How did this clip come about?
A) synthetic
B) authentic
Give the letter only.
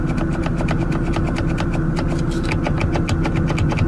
B